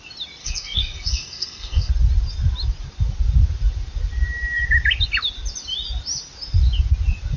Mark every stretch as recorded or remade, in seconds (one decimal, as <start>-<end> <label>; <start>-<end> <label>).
0.0-0.4 recorded; 0.4-1.9 remade; 1.9-7.4 recorded